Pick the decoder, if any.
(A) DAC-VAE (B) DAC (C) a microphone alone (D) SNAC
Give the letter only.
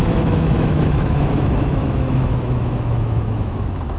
A